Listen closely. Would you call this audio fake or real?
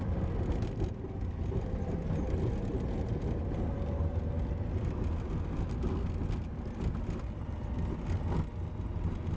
real